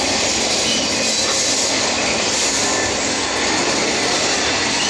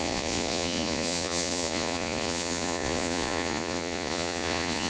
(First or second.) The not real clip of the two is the second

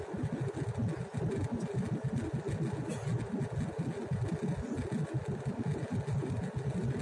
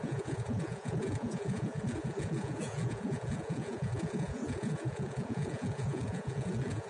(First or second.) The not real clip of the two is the second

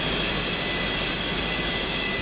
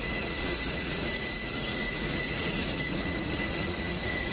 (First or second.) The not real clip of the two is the second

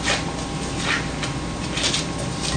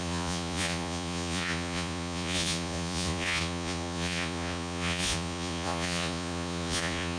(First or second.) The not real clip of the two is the second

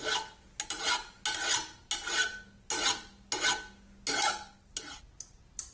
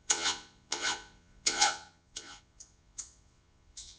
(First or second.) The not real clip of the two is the second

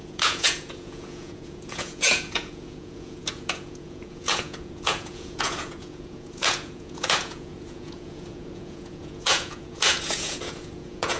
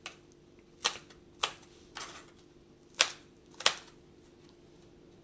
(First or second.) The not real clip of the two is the first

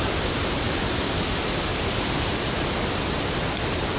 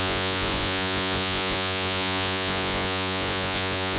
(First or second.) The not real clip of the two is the second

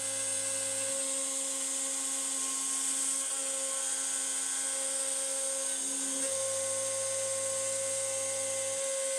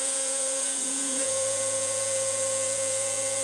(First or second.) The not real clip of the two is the second